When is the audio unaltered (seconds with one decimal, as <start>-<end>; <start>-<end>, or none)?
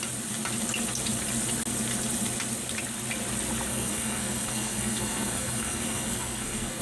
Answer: 0.0-3.7